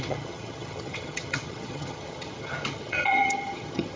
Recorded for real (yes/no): no